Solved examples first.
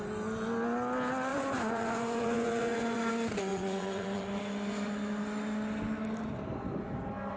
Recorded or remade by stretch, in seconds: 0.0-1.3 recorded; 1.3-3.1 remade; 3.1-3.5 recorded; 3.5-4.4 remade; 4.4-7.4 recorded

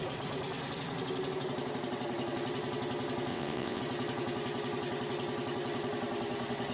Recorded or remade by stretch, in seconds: 0.0-3.3 recorded; 3.3-3.8 remade; 3.8-6.7 recorded

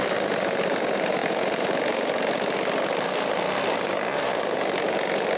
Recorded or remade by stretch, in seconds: 0.0-5.4 recorded